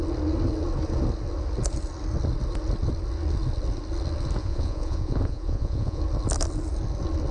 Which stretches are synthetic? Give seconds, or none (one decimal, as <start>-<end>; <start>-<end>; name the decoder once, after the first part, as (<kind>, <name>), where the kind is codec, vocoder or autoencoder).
4.4-6.0 (vocoder, Vocos)